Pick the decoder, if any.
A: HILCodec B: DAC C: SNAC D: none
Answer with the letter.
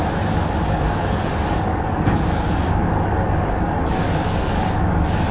B